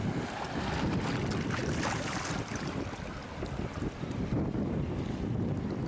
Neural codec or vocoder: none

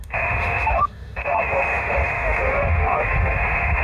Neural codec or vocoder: autoencoder, DAC-VAE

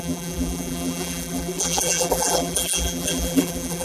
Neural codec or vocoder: vocoder, BigVGAN v2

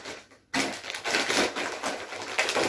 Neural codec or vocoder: none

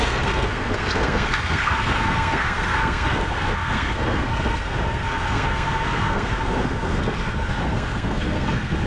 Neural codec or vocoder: codec, SNAC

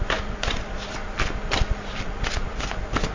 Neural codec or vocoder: none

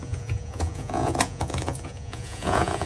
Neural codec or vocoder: vocoder, Vocos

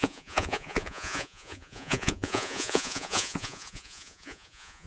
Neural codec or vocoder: vocoder, Vocos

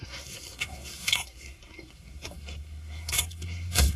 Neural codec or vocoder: codec, SNAC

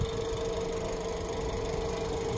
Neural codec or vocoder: none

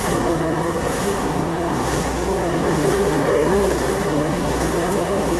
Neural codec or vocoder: codec, SNAC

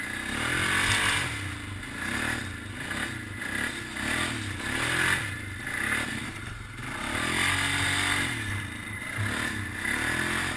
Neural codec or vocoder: none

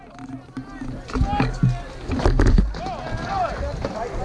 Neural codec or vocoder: none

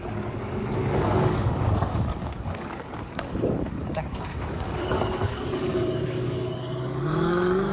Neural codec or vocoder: codec, DAC